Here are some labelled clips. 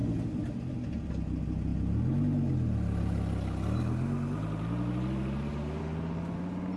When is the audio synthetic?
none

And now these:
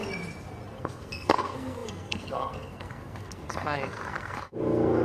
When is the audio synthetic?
0.8-5.0 (codec, SNAC)

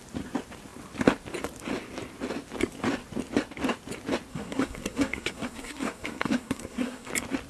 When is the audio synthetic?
4.3-7.1 (codec, SNAC)